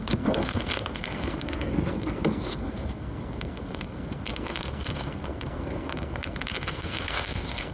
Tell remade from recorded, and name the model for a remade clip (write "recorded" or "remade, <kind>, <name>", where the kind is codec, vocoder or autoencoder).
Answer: remade, codec, SNAC